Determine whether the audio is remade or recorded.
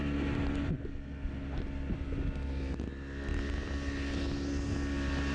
recorded